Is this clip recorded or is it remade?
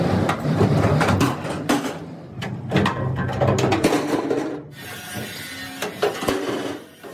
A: recorded